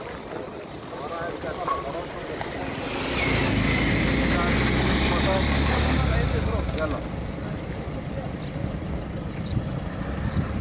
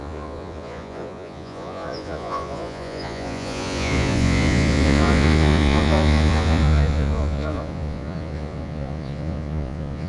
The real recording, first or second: first